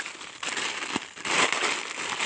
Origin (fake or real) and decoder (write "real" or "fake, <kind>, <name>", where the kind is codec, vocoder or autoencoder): real